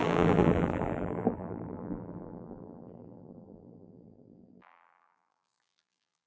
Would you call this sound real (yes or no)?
no